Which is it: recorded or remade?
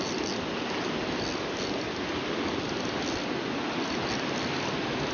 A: recorded